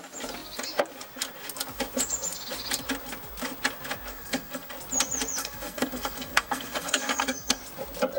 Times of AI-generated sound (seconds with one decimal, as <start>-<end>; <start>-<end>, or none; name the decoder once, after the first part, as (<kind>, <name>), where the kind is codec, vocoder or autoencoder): 4.1-4.7 (codec, SNAC); 5.4-7.6